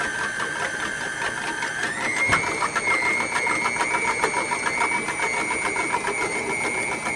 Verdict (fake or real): real